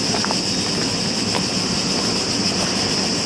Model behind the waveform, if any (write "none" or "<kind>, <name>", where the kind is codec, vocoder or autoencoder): none